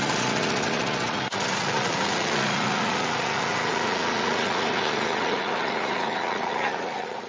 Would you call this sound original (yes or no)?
no